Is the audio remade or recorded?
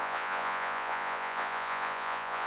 remade